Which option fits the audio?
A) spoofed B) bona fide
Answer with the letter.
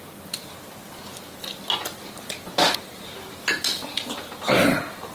B